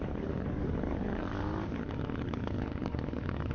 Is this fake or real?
fake